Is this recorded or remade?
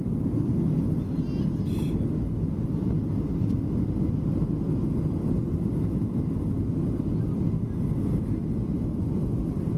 recorded